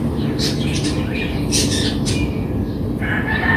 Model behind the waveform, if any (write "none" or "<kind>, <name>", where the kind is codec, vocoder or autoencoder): none